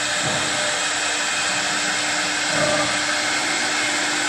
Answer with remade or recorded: recorded